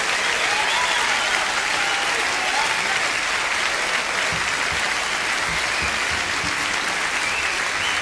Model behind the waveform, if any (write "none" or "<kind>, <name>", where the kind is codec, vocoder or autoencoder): none